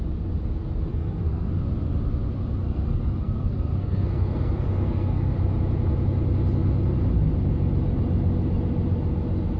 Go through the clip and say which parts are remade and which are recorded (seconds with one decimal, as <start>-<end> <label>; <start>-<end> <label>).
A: 0.0-0.9 recorded; 0.9-1.5 remade; 1.5-2.6 recorded; 2.6-5.3 remade; 5.3-9.6 recorded